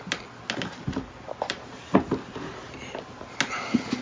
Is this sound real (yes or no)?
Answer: yes